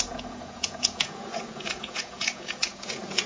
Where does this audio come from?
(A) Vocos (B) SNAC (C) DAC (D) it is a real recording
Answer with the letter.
A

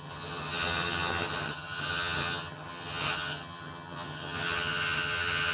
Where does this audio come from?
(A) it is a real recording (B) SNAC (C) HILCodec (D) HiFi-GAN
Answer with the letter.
D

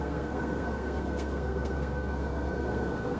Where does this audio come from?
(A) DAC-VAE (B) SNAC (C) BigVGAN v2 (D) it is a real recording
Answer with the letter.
B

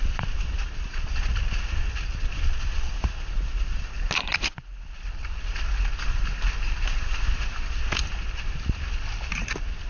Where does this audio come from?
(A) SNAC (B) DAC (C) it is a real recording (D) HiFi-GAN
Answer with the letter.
C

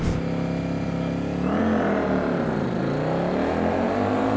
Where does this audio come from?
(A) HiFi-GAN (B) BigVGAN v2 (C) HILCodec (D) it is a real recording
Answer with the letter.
D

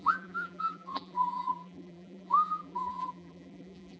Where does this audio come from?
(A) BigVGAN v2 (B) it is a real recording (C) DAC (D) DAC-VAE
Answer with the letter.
A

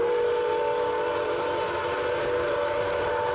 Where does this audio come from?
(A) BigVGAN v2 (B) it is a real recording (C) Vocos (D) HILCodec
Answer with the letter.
B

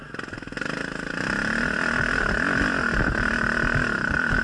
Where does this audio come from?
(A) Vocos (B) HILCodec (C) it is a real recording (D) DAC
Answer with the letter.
C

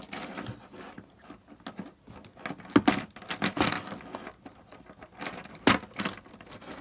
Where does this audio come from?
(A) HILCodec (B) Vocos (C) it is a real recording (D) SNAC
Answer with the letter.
C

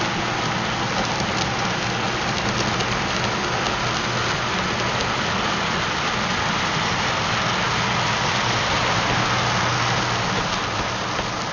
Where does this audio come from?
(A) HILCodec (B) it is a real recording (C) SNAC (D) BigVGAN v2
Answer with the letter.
B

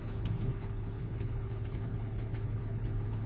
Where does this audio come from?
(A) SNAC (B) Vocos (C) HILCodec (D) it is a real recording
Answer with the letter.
C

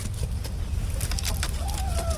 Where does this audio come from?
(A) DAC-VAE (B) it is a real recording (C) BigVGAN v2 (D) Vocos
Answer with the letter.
B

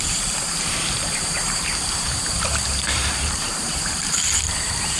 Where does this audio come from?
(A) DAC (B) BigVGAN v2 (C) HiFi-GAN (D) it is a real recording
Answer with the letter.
B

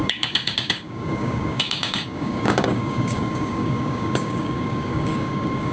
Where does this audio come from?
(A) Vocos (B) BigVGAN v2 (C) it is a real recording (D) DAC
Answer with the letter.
D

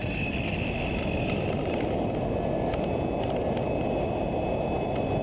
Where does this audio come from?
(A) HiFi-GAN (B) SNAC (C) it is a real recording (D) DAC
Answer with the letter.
C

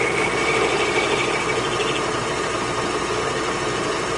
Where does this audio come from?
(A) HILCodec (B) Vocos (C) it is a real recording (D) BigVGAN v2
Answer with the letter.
D